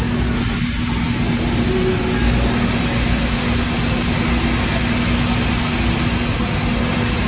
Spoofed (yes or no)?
no